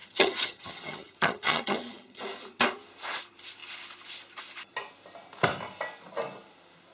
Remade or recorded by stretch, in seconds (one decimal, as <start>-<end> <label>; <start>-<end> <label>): 0.0-2.2 remade; 2.2-6.9 recorded